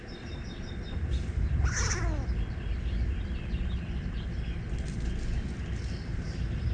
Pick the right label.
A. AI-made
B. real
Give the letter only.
B